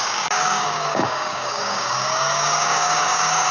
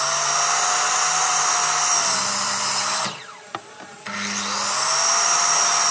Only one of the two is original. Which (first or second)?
second